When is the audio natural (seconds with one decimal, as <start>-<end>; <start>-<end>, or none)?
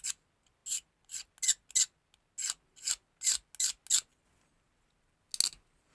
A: 0.0-5.9